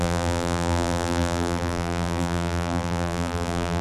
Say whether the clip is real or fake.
fake